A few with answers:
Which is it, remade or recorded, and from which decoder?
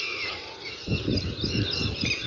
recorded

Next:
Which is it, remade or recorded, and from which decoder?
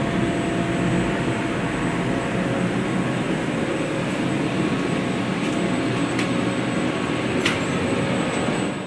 recorded